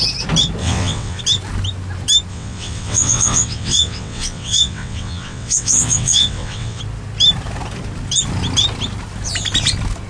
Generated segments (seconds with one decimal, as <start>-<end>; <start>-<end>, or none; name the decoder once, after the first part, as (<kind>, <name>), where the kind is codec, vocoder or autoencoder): 0.6-1.2 (vocoder, WaveNeXt); 2.3-6.8